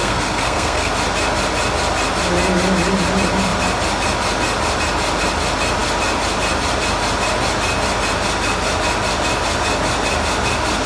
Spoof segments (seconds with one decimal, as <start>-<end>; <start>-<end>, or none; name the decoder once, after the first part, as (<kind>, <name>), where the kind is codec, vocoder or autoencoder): 0.0-0.9 (codec, SNAC)